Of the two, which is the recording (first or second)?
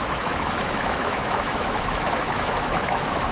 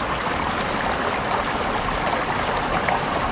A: second